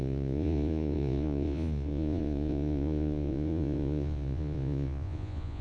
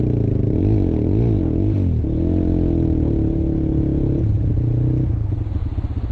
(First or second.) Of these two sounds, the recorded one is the second